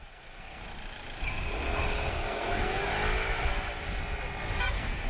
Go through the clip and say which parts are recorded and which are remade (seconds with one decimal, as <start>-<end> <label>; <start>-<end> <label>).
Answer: 0.0-0.6 remade; 0.6-2.1 recorded; 2.1-2.9 remade; 2.9-4.6 recorded; 4.6-5.1 remade